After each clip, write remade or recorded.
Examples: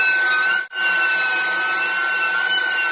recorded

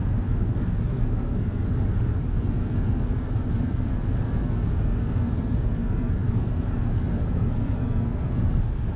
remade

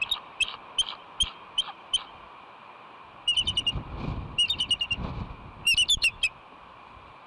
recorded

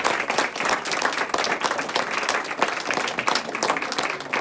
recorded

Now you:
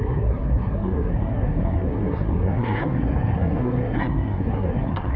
remade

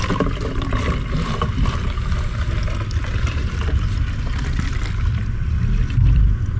recorded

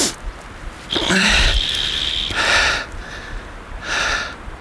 recorded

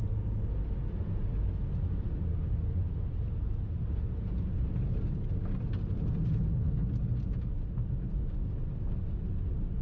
recorded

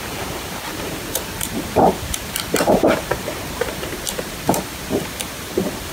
remade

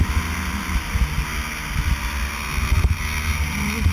recorded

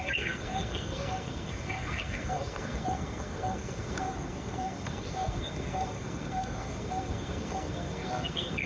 remade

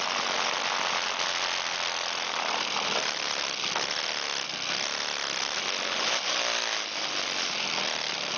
recorded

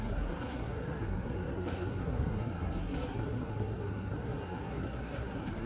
remade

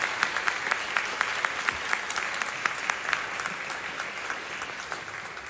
recorded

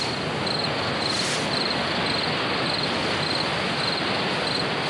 recorded